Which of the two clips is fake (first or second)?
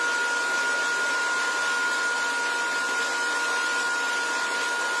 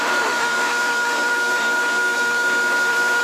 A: second